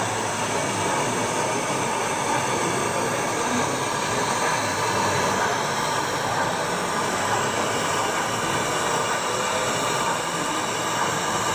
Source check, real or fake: real